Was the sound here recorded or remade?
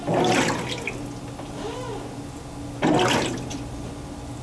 recorded